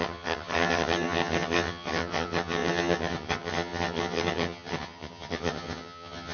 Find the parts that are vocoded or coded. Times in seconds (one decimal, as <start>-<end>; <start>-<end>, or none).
0.0-6.3